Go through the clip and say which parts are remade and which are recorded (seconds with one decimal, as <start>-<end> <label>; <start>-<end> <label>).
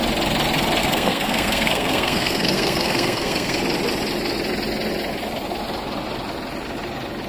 0.0-0.8 recorded; 0.8-3.6 remade; 3.6-7.3 recorded